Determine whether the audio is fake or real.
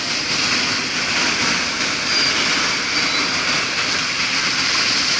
real